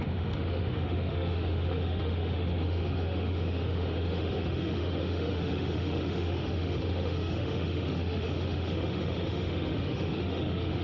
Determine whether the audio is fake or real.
fake